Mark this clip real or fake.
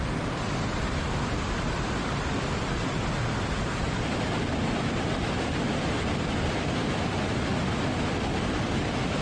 real